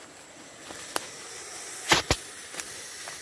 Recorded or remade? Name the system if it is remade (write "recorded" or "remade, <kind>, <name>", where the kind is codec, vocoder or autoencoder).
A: recorded